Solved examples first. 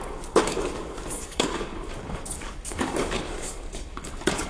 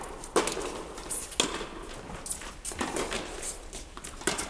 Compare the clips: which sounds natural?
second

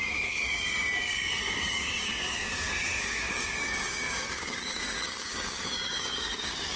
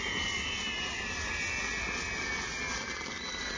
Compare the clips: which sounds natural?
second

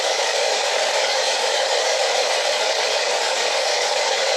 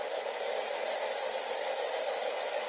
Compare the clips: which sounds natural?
second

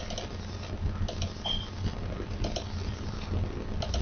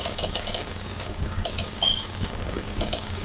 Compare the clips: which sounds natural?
first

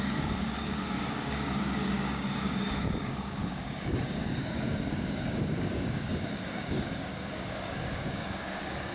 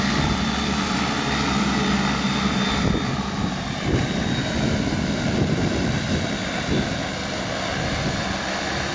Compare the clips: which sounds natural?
second